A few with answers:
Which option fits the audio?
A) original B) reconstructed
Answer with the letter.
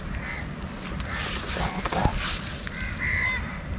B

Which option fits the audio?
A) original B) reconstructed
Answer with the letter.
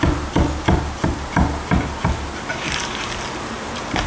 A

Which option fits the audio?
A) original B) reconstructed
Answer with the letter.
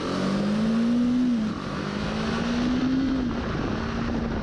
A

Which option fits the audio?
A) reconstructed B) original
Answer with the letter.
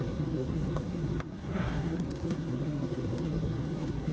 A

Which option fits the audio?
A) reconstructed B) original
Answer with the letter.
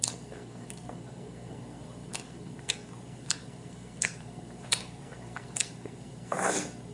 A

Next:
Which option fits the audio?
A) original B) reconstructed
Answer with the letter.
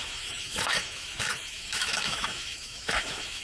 B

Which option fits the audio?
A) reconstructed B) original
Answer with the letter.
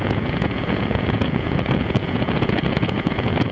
A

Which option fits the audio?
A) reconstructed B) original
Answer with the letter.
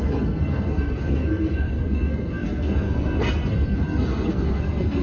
A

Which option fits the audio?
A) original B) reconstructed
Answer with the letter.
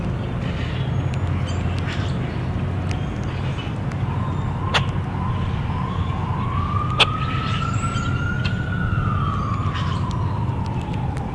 A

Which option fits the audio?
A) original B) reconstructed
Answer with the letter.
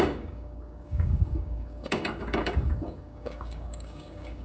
B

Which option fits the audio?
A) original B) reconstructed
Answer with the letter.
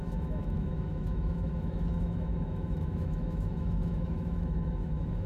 B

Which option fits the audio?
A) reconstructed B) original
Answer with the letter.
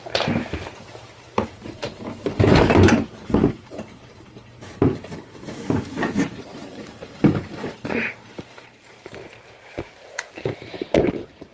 A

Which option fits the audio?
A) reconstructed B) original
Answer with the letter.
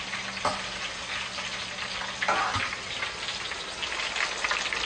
B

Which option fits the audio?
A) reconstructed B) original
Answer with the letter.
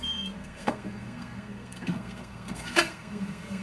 A